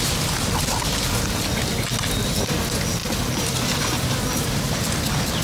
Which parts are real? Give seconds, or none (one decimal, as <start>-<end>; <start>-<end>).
0.0-5.4